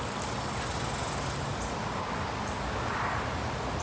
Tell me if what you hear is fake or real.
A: real